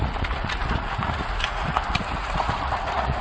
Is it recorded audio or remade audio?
remade